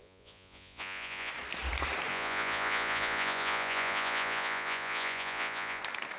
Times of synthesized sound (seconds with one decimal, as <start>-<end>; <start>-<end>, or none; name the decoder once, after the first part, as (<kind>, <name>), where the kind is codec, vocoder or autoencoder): 0.0-1.3 (vocoder, Vocos); 2.1-5.8